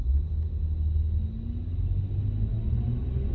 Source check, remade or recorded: recorded